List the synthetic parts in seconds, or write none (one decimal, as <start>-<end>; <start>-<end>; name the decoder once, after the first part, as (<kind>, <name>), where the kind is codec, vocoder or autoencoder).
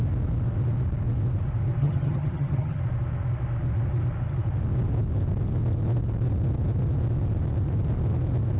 1.8-2.8 (vocoder, HiFi-GAN)